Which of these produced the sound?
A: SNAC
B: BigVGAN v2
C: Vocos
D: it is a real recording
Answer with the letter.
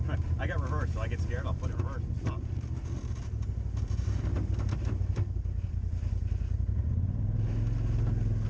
D